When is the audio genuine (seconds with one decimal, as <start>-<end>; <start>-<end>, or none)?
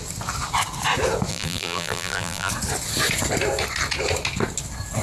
0.0-1.3; 2.5-5.0